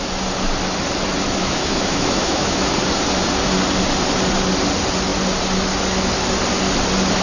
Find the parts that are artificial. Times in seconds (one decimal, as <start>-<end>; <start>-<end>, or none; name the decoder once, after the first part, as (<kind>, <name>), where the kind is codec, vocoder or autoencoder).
1.4-2.7 (autoencoder, DAC-VAE)